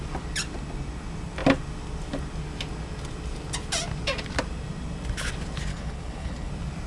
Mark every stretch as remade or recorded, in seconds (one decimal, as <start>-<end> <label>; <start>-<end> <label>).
0.0-5.7 recorded; 5.7-6.5 remade; 6.5-6.9 recorded